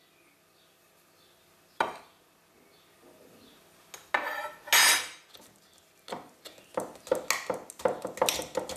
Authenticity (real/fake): real